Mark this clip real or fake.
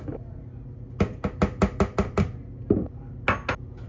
real